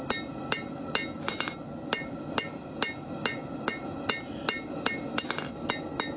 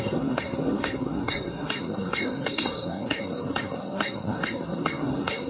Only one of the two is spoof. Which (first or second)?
second